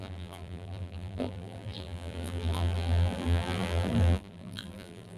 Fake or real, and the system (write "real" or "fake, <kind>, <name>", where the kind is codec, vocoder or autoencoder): fake, vocoder, BigVGAN v2